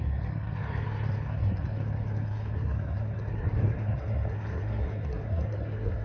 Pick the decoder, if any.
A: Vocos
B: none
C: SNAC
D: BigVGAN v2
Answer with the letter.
C